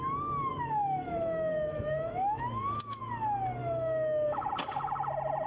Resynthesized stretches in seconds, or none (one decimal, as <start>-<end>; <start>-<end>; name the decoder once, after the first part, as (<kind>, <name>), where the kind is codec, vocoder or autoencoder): 0.5-3.0 (autoencoder, DAC-VAE); 3.6-4.5